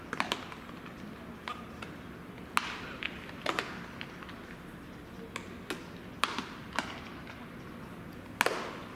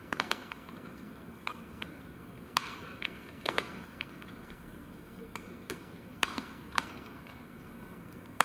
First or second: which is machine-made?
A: second